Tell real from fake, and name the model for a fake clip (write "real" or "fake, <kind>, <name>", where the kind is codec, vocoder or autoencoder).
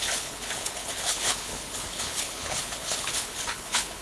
fake, codec, HILCodec